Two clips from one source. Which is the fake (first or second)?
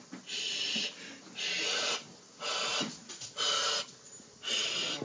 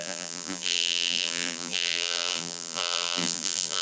second